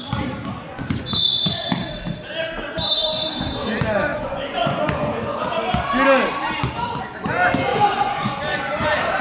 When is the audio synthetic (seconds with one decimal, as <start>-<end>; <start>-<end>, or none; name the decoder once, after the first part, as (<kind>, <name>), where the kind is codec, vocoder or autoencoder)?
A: 0.7-1.6 (vocoder, Vocos); 4.1-5.4; 7.7-8.7